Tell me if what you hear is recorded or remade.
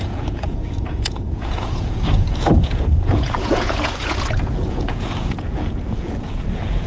remade